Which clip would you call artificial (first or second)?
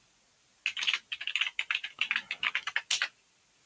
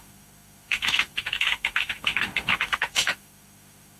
second